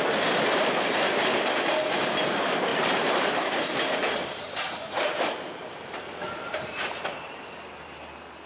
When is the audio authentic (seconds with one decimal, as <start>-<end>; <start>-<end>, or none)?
0.0-2.7; 3.5-4.2; 7.4-8.5